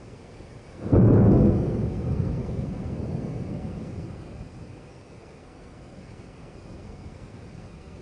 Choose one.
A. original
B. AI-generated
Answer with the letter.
B